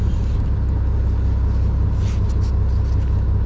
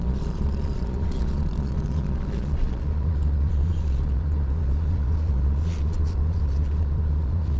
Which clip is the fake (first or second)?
second